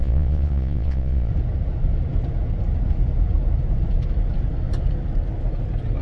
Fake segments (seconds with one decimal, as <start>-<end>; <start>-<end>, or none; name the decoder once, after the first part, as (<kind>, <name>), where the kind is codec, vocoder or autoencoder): 0.0-1.3 (vocoder, Vocos)